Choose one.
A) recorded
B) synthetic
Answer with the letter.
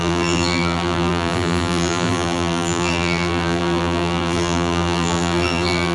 B